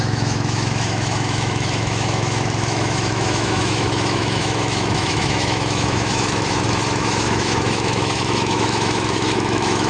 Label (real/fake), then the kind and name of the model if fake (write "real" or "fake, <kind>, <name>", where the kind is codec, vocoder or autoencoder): fake, autoencoder, DAC-VAE